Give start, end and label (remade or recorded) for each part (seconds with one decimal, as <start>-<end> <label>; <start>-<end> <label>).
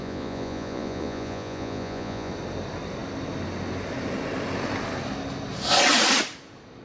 0.0-2.3 remade; 2.3-6.8 recorded